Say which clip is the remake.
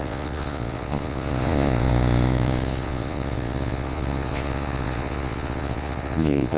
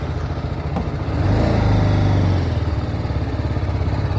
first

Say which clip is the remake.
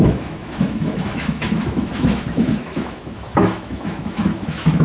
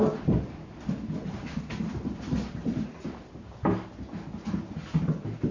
first